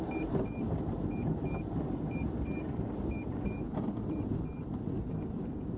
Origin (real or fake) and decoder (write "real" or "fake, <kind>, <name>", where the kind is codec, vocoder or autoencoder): fake, vocoder, BigVGAN v2